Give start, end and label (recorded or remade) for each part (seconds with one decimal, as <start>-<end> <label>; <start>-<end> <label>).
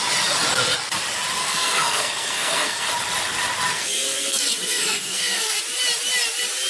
0.0-1.4 recorded; 1.4-2.9 remade; 2.9-3.7 recorded; 3.7-5.6 remade; 5.6-6.7 recorded